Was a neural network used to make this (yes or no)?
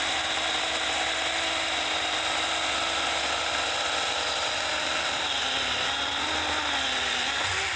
no